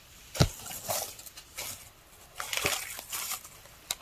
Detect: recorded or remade recorded